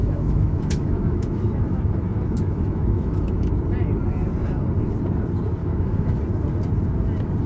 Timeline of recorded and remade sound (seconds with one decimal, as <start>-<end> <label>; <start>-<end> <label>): 0.0-3.5 remade; 3.5-5.6 recorded; 5.6-6.2 remade; 6.2-7.5 recorded